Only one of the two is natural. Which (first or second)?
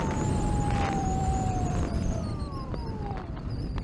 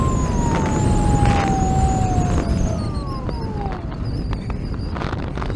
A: second